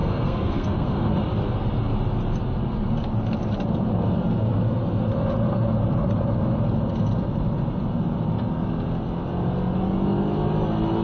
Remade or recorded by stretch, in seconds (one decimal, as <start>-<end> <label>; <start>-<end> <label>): 0.0-1.1 remade; 1.1-11.0 recorded